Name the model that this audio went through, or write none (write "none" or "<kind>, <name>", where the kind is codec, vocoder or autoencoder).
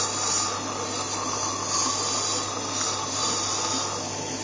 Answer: none